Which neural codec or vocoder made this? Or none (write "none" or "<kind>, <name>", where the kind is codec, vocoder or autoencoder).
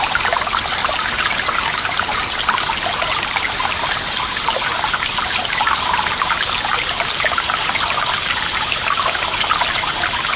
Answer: none